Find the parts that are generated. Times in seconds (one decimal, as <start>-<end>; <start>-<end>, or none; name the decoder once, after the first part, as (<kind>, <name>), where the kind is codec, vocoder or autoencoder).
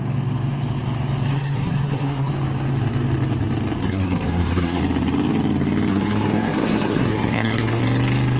1.3-2.3 (codec, SNAC); 3.8-4.8; 5.9-7.8